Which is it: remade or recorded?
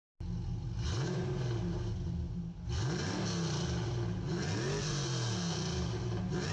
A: recorded